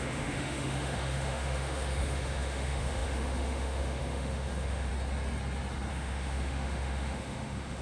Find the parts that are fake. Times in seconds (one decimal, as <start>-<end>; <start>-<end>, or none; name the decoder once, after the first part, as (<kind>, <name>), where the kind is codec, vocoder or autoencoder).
0.0-4.9 (autoencoder, DAC-VAE); 5.9-7.8